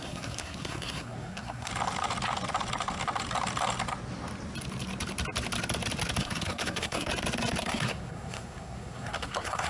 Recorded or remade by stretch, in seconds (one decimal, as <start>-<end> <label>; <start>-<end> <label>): 0.0-1.7 remade; 1.7-6.2 recorded; 6.2-7.1 remade; 7.1-7.6 recorded; 7.6-9.7 remade